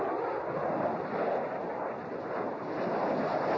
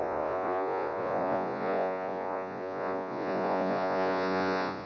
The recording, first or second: first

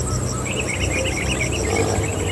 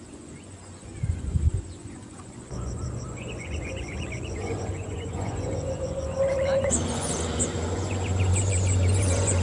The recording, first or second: first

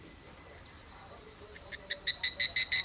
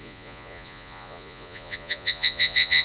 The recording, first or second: first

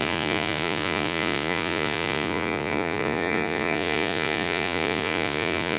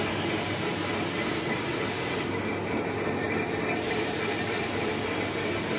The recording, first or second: second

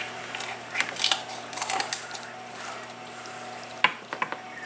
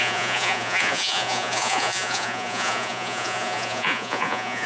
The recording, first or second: first